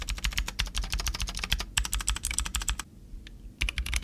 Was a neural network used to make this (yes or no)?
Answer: no